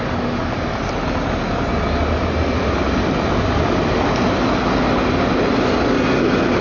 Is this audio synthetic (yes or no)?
no